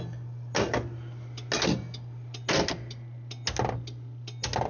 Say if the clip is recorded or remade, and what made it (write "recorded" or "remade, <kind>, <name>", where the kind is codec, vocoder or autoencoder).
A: recorded